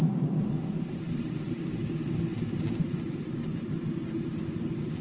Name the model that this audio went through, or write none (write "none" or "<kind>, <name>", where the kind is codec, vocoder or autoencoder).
none